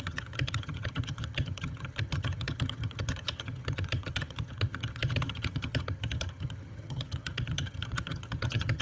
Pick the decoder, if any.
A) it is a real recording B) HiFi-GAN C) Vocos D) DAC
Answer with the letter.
B